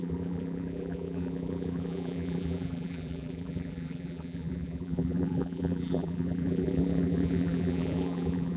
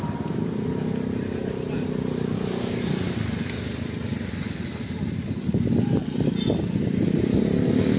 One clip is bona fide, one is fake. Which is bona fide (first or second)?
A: second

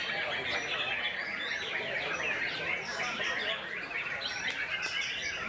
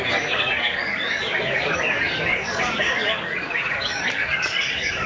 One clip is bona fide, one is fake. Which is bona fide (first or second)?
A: first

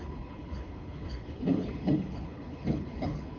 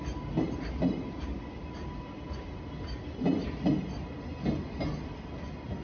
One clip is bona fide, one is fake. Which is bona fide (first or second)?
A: second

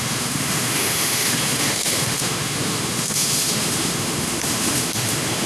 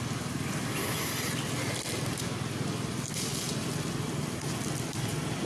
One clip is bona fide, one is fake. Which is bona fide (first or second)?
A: second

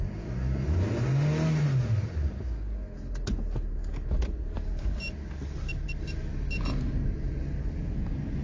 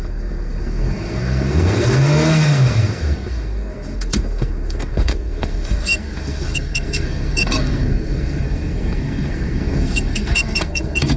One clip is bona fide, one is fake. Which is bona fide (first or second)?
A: first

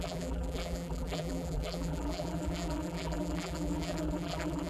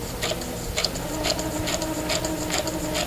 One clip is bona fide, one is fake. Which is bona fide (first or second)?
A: second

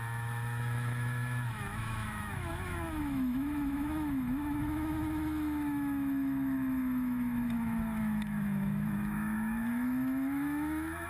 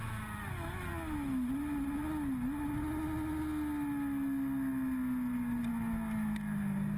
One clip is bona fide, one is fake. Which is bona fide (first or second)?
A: second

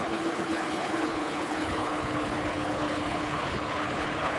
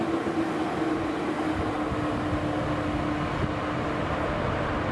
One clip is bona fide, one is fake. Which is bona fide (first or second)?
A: second